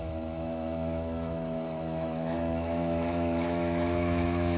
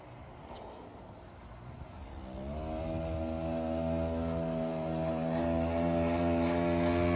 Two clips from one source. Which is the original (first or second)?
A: second